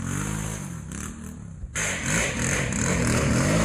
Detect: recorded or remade recorded